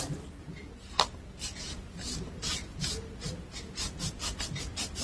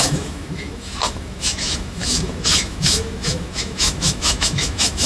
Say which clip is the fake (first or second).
second